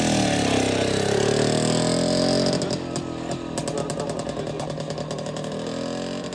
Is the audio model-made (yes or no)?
no